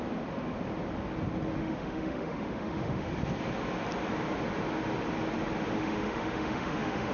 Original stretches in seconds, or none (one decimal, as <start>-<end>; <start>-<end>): 0.0-1.6; 3.1-5.8